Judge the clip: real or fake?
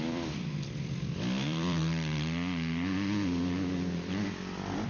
fake